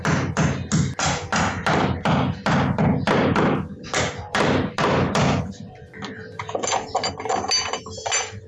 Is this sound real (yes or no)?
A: yes